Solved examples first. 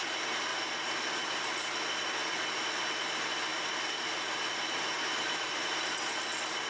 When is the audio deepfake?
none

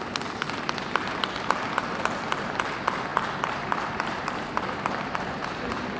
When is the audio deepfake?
3.1-6.0 (vocoder, BigVGAN v2)